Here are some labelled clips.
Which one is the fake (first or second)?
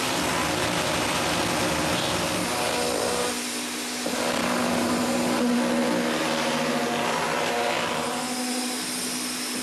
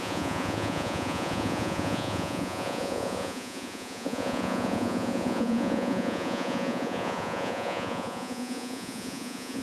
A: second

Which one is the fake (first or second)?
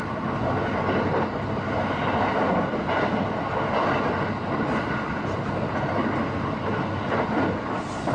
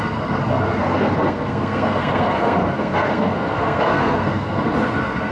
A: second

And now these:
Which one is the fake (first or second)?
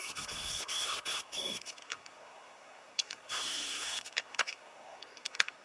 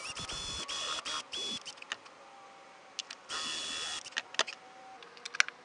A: first